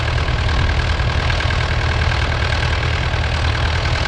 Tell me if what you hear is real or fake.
real